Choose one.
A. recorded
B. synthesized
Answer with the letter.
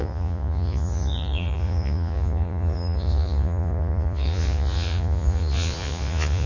B